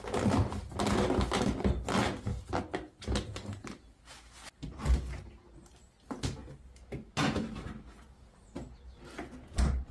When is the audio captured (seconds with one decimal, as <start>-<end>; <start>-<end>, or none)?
0.0-9.9